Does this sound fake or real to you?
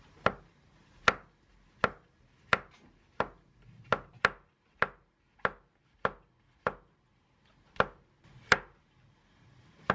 real